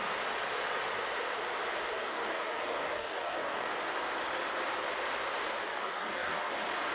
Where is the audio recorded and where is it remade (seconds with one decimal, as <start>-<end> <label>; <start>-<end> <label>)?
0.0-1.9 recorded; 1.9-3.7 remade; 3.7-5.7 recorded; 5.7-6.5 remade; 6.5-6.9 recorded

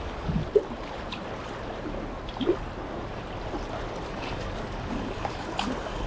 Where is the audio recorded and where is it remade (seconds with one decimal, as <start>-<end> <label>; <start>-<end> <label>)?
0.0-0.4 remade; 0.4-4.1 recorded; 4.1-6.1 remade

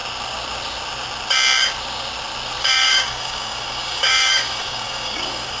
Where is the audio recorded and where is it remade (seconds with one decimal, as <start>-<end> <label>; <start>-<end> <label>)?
0.0-2.6 recorded; 2.6-5.6 remade